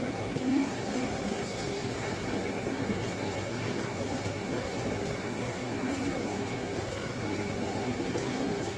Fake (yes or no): yes